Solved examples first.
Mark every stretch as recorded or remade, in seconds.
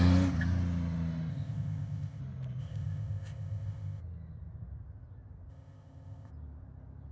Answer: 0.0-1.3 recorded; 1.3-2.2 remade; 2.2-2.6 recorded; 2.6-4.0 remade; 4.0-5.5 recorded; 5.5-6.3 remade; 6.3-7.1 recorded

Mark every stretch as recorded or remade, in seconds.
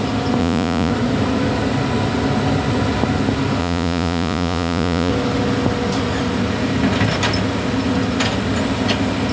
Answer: 0.0-0.4 recorded; 0.4-0.9 remade; 0.9-3.6 recorded; 3.6-5.1 remade; 5.1-9.3 recorded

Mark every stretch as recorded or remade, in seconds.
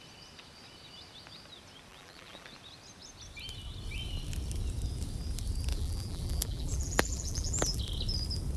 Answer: 0.0-1.9 recorded; 1.9-2.5 remade; 2.5-5.7 recorded; 5.7-7.8 remade; 7.8-8.6 recorded